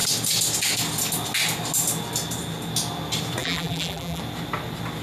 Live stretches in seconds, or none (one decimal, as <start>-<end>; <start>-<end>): 0.0-3.4; 4.2-5.0